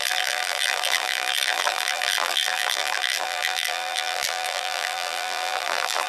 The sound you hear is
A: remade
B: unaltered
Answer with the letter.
A